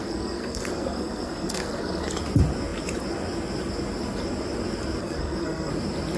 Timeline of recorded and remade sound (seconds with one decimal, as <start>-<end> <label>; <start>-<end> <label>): 0.0-2.2 remade; 2.2-5.0 recorded; 5.0-5.7 remade; 5.7-6.2 recorded